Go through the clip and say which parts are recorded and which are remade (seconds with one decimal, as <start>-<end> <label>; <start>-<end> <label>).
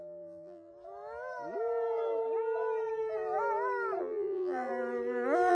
0.0-0.7 remade; 0.7-4.0 recorded; 4.0-4.7 remade; 4.7-5.5 recorded